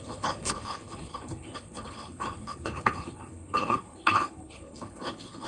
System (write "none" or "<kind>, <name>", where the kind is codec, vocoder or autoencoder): codec, HILCodec